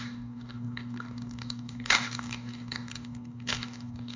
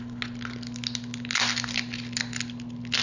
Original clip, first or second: second